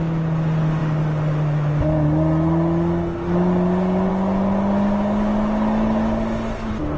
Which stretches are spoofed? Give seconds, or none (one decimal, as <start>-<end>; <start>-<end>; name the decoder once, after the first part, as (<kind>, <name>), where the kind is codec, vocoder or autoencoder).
none